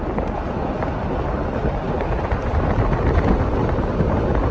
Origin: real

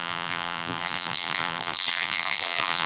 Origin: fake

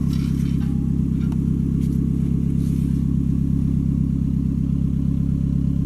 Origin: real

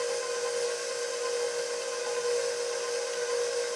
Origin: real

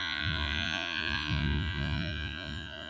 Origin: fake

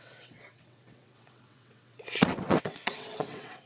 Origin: fake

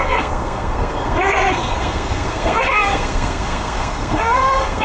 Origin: fake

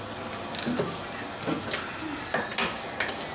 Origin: real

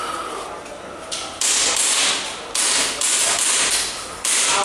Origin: real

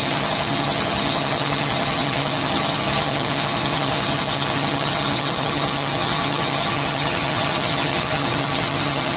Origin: fake